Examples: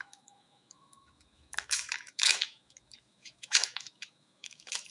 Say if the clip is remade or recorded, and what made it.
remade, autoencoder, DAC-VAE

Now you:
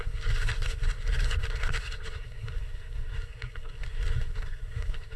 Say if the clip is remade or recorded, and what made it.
remade, codec, SNAC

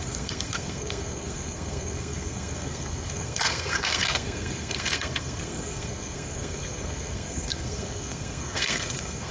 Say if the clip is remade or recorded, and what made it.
remade, codec, SNAC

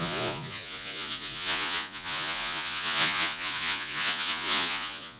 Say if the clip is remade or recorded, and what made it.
remade, vocoder, Vocos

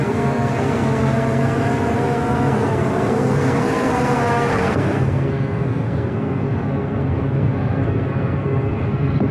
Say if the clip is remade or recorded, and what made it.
remade, codec, SNAC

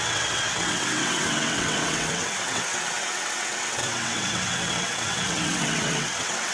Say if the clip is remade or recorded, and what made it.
remade, vocoder, WaveNeXt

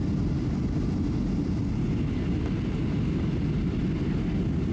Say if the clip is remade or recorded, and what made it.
recorded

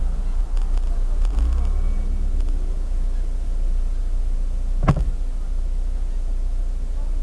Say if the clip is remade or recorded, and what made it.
recorded